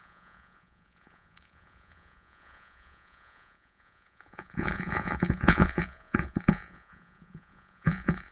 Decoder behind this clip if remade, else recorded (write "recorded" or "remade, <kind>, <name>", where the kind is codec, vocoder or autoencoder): remade, vocoder, Vocos